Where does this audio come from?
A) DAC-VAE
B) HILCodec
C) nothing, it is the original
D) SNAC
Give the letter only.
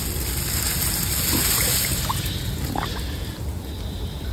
C